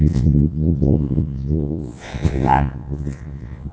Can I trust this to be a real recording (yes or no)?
no